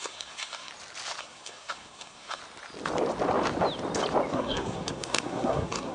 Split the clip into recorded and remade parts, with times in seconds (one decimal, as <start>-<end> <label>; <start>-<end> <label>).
0.0-0.7 remade; 0.7-1.2 recorded; 1.2-2.4 remade; 2.4-4.3 recorded; 4.3-5.9 remade